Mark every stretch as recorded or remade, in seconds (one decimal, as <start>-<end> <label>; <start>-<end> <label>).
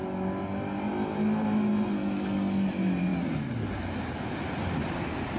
0.0-5.4 recorded